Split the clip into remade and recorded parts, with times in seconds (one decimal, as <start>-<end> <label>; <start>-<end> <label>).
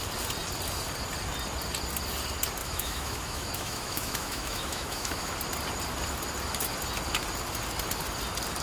0.0-2.6 recorded; 2.6-5.3 remade; 5.3-8.6 recorded